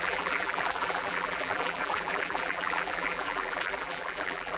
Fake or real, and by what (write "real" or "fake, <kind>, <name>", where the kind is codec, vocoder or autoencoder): fake, vocoder, BigVGAN v2